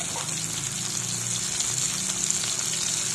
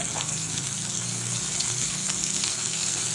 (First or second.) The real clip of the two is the first